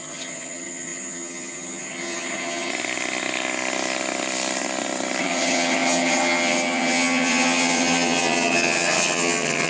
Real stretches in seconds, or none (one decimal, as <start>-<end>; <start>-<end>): 2.7-5.2